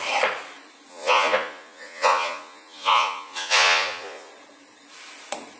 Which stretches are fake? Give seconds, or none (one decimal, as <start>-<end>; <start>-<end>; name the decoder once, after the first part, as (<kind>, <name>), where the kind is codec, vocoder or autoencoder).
0.9-4.3 (vocoder, Vocos)